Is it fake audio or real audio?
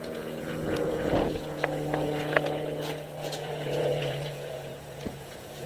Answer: fake